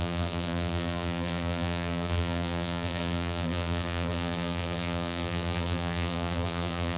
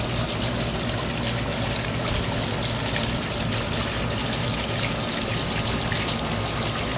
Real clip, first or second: second